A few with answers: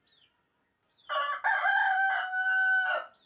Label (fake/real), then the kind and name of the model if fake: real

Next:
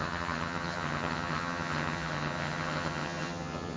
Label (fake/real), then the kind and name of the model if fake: fake, vocoder, HiFi-GAN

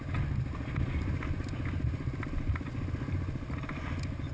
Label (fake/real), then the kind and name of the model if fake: real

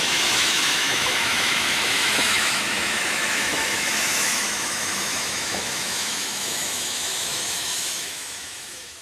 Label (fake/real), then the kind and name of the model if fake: fake, autoencoder, DAC-VAE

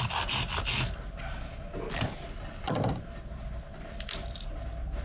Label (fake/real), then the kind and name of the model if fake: real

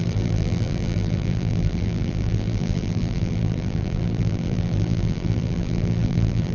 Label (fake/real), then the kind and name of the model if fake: fake, vocoder, BigVGAN v2